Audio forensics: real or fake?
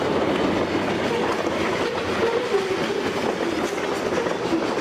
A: real